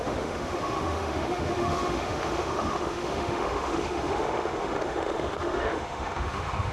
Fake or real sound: fake